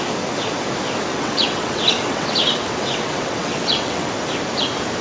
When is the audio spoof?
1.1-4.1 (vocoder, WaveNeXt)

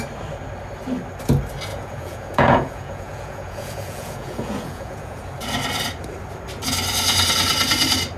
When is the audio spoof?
1.7-5.2 (vocoder, Vocos)

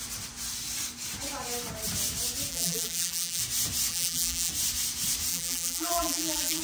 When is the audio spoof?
2.5-3.4 (vocoder, BigVGAN v2); 3.9-4.5; 5.3-6.6

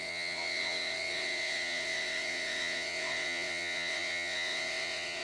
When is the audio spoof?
0.0-5.2 (vocoder, WaveNeXt)

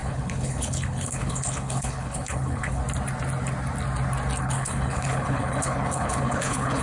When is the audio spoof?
0.0-2.8 (codec, HILCodec); 4.4-6.8

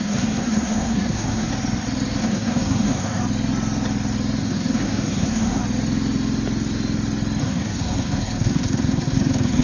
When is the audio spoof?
0.0-1.5 (codec, SNAC); 2.2-3.2; 4.4-5.6; 7.4-9.6

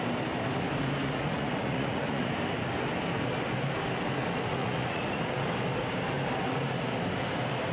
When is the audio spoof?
1.0-2.3 (vocoder, Vocos); 4.5-5.2

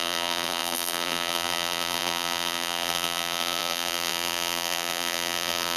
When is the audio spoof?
0.0-5.8 (vocoder, BigVGAN v2)